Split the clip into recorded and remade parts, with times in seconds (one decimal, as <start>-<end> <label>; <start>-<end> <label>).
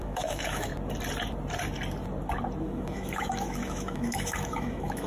0.0-0.7 remade; 0.7-2.6 recorded; 2.6-5.1 remade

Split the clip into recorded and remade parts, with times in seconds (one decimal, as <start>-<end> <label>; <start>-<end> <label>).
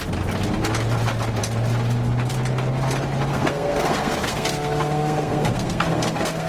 0.0-3.3 recorded; 3.3-6.5 remade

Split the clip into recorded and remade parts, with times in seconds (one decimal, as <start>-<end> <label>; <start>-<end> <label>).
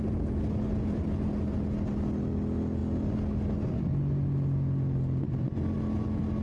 0.0-6.4 recorded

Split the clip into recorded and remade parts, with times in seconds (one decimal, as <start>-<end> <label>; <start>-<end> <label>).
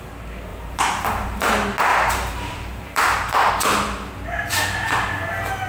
0.0-0.5 recorded; 0.5-1.5 remade; 1.5-1.9 recorded; 1.9-3.5 remade; 3.5-5.7 recorded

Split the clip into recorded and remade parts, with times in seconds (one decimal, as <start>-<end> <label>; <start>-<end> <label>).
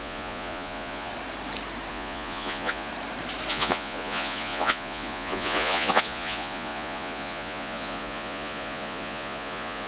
0.0-1.1 remade; 1.1-1.9 recorded; 1.9-2.9 remade; 2.9-3.5 recorded; 3.5-9.9 remade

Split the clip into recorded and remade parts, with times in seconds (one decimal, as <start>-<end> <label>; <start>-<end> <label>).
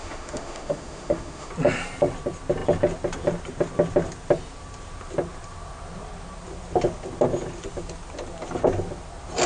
0.0-1.5 remade; 1.5-9.5 recorded